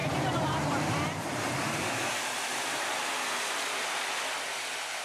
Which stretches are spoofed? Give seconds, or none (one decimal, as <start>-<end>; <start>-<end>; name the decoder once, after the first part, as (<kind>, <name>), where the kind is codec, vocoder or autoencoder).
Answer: 0.0-3.0 (vocoder, BigVGAN v2)